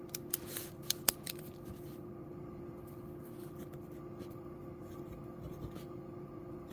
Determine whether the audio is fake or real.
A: fake